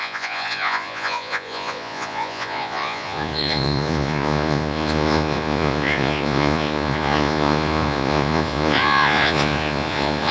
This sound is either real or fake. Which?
fake